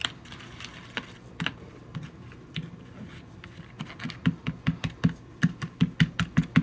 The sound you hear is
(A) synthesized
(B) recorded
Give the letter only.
B